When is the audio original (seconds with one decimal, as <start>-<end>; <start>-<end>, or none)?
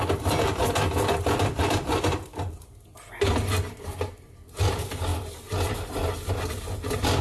0.0-7.2